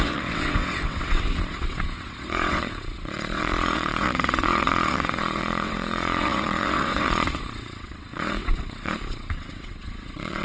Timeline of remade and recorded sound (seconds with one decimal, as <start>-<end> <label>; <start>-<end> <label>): 0.0-10.4 remade